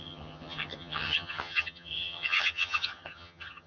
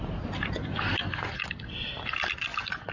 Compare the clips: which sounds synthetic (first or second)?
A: first